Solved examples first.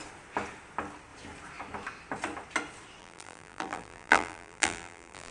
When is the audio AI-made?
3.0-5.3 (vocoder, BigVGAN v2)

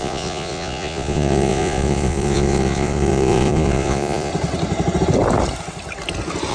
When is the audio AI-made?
0.0-4.3 (vocoder, Vocos)